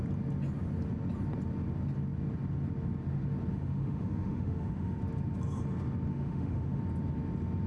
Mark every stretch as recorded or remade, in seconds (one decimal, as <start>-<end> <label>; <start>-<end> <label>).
0.0-3.5 recorded; 3.5-5.0 remade; 5.0-6.1 recorded; 6.1-6.8 remade; 6.8-7.7 recorded